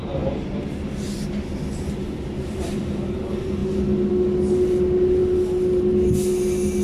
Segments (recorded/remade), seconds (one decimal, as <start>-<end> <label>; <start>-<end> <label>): 0.0-6.8 recorded